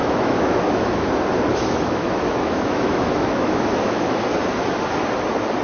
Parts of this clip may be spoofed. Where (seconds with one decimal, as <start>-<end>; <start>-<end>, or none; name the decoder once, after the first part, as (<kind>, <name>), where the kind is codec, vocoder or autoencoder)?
0.0-1.1 (autoencoder, DAC-VAE); 1.5-4.2